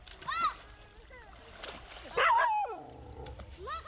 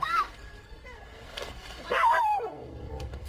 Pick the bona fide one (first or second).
first